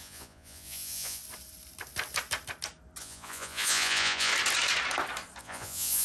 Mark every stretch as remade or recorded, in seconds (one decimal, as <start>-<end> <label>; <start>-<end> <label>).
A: 0.0-1.2 remade; 1.2-3.0 recorded; 3.0-4.3 remade; 4.3-5.4 recorded; 5.4-6.0 remade